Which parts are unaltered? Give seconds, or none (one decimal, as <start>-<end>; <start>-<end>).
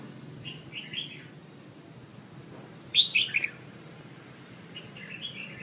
0.0-1.4; 4.8-5.6